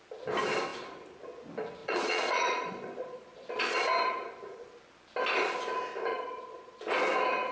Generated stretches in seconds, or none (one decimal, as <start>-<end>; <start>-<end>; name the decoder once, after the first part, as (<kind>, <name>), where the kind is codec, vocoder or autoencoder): 1.8-3.8 (vocoder, Vocos); 6.1-6.8